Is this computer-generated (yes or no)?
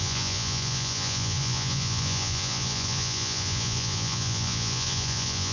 yes